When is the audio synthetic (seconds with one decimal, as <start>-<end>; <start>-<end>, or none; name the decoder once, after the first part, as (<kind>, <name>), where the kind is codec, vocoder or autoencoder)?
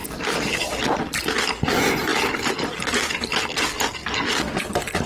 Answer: 0.0-0.7 (vocoder, BigVGAN v2)